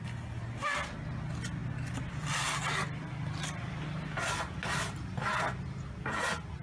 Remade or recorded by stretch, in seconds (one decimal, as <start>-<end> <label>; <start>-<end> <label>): 0.0-6.6 recorded